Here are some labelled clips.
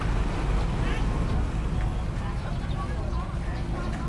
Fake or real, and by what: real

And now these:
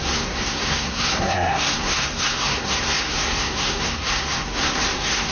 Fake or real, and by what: fake, codec, SNAC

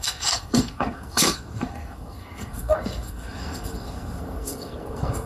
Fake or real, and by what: fake, codec, SNAC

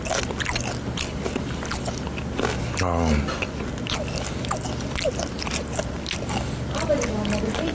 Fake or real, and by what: real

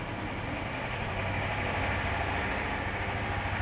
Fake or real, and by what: real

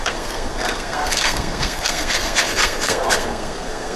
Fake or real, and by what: fake, codec, SNAC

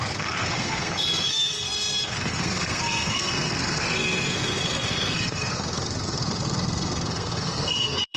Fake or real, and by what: fake, codec, SNAC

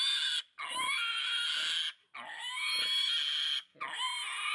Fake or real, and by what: real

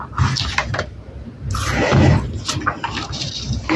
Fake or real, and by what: real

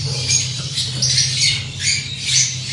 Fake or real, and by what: real